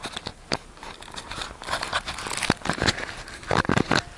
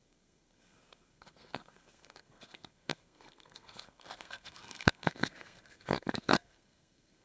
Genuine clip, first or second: first